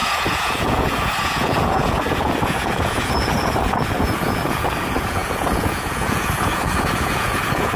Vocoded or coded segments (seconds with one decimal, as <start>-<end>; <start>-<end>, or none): 0.0-7.8